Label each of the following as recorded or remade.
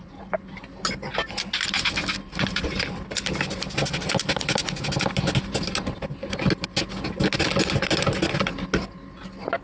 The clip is recorded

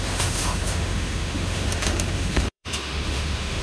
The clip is remade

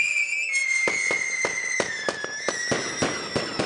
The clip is recorded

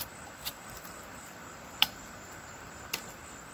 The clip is remade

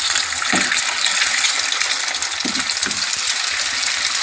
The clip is recorded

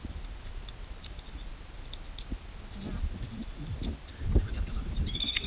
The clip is recorded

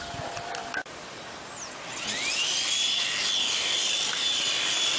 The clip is recorded